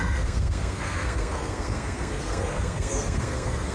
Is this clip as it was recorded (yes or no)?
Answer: no